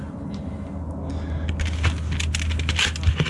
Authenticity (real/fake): real